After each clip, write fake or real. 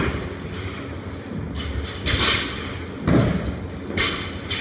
real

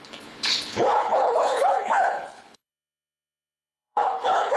fake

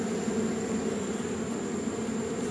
real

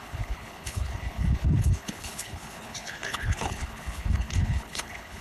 fake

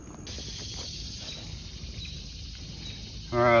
real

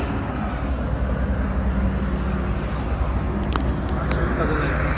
real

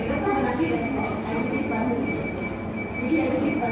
real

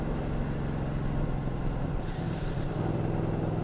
real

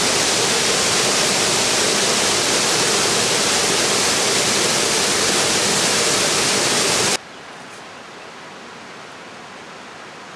real